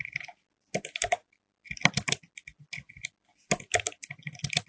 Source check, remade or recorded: recorded